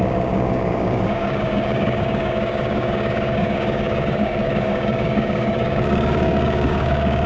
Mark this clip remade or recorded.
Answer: remade